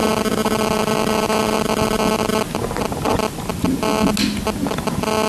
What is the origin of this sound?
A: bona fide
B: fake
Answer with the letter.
A